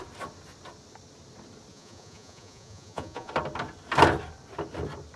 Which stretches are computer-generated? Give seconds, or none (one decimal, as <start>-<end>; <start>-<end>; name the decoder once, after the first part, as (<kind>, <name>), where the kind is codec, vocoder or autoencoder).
1.7-3.3 (vocoder, Vocos)